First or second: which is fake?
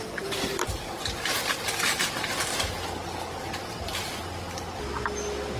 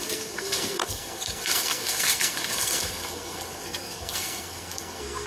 second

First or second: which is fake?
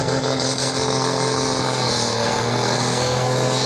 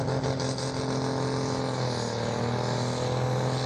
first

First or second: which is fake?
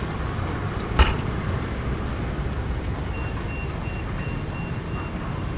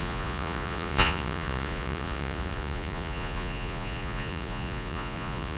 second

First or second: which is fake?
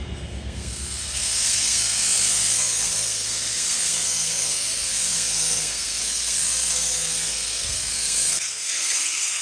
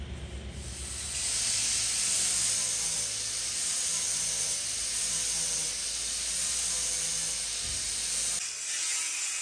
first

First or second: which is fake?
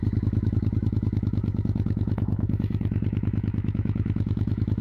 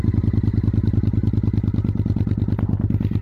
first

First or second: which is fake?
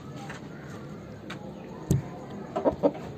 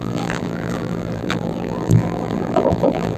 second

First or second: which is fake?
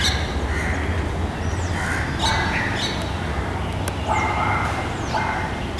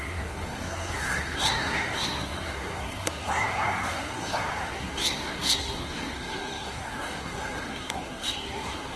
second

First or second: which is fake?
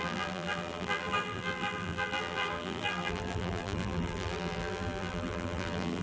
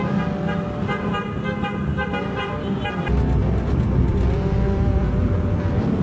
first